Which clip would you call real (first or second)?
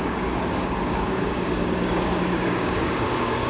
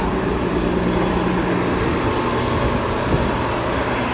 second